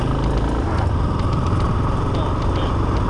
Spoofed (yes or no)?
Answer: no